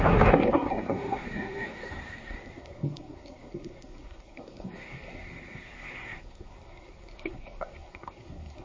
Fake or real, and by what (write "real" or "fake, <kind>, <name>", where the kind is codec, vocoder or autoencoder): fake, codec, SNAC